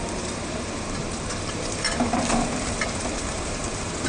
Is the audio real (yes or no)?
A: no